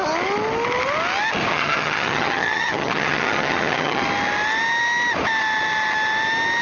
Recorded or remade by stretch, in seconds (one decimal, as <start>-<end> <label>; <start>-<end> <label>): 0.0-1.5 recorded; 1.5-4.0 remade; 4.0-6.6 recorded